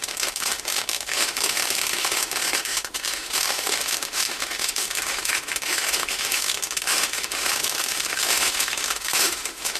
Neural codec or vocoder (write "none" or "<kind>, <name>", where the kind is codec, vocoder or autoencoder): autoencoder, DAC-VAE